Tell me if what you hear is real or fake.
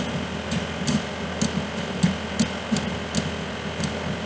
real